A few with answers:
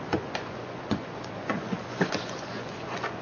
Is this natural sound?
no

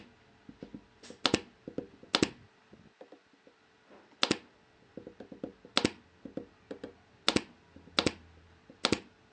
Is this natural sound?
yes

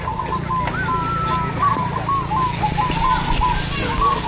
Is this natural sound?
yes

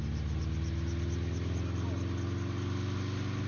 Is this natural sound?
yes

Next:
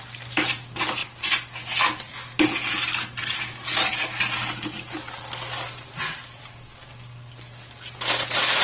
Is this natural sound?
yes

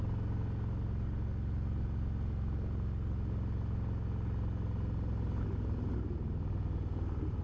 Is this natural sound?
yes